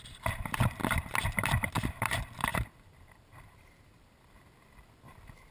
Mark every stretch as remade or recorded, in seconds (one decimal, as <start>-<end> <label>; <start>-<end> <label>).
0.0-5.5 remade